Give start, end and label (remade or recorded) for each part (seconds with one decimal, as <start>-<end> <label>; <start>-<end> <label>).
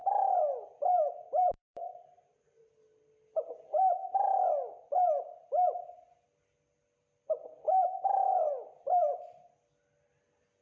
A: 0.0-1.1 recorded; 1.1-4.0 remade; 4.0-5.5 recorded; 5.5-10.6 remade